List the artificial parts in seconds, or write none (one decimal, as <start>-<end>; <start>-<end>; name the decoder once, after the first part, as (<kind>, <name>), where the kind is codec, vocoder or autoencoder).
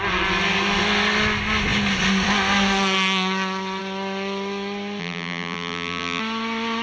5.0-6.2 (vocoder, BigVGAN v2)